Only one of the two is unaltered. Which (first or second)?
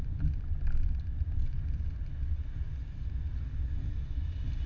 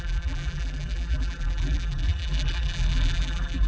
first